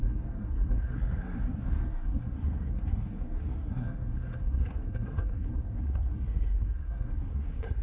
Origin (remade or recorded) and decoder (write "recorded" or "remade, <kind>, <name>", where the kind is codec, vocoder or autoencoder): remade, codec, SNAC